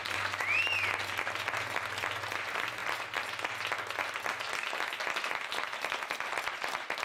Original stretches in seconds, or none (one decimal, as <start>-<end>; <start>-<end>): 0.0-7.0

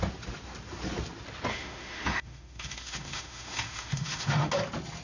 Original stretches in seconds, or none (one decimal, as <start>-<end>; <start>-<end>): 0.0-1.5; 4.5-5.0

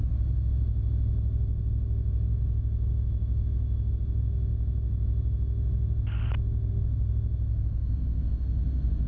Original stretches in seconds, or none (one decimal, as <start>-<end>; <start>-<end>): 0.0-2.3; 3.9-9.1

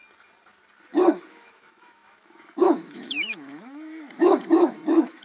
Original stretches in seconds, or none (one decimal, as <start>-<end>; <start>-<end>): 0.0-1.3